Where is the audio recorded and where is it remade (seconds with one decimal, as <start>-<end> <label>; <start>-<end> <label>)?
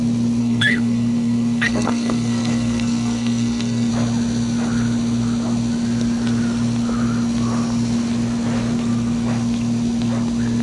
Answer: 0.0-0.4 recorded; 0.4-3.9 remade; 3.9-10.6 recorded